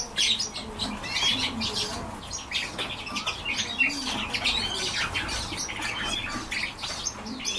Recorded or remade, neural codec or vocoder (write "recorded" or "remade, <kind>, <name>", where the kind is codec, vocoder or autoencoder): recorded